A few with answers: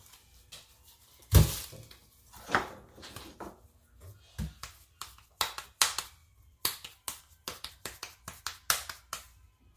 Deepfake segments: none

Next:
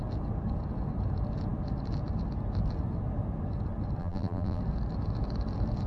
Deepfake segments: 4.0-4.6 (vocoder, BigVGAN v2)

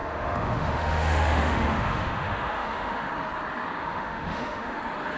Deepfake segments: 0.0-3.1 (autoencoder, DAC-VAE); 3.8-4.8

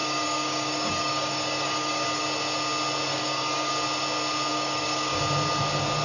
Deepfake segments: 0.0-2.2 (codec, DAC); 3.1-3.7; 4.5-5.2

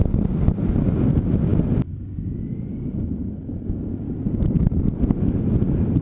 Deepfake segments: none

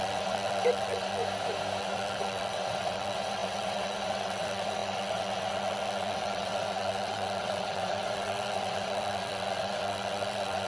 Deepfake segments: 0.0-1.2 (vocoder, WaveNeXt); 1.8-10.7

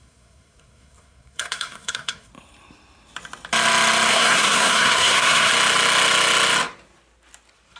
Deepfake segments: 0.0-2.3 (codec, SNAC); 4.1-5.5

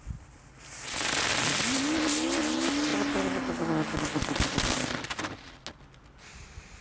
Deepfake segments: none